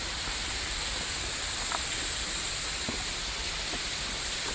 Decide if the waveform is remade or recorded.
recorded